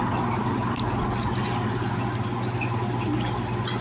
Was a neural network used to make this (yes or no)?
no